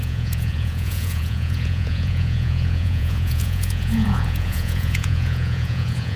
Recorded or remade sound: remade